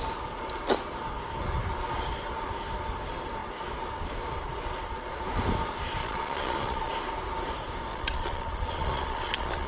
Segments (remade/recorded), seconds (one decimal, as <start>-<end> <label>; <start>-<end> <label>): 0.0-6.0 recorded; 6.0-6.9 remade; 6.9-7.9 recorded; 7.9-9.7 remade